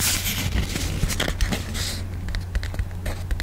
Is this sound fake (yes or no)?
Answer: no